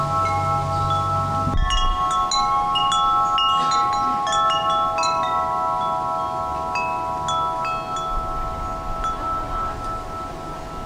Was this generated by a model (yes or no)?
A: no